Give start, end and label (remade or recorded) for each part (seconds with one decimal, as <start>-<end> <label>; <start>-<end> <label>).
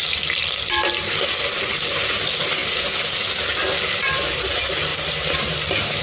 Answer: 0.0-4.9 recorded; 4.9-5.6 remade; 5.6-6.0 recorded